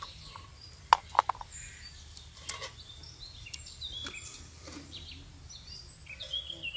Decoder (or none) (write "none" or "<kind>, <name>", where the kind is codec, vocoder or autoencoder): none